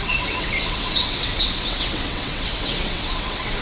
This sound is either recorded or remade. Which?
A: remade